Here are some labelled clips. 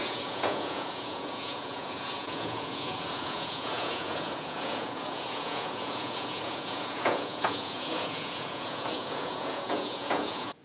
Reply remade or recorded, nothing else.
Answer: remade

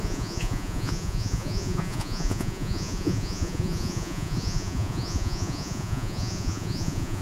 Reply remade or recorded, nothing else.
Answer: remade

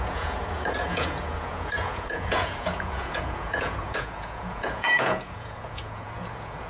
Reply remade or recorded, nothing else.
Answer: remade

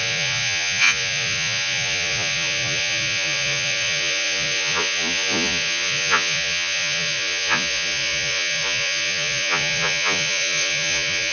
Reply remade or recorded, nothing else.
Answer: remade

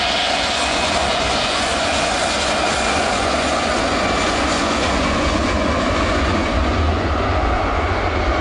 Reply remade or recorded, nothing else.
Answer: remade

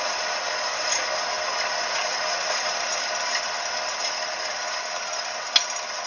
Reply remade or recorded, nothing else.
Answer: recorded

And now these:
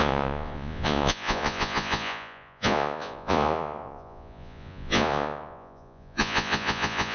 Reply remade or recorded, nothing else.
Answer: remade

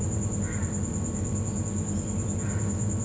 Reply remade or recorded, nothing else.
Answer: recorded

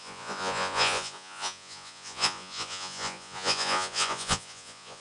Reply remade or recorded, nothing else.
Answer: remade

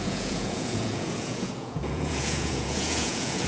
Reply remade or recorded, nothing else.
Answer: remade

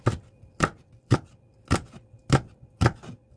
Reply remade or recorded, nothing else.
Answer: recorded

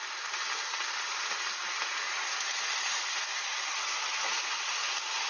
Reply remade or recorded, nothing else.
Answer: recorded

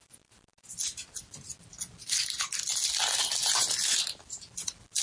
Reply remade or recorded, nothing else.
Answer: recorded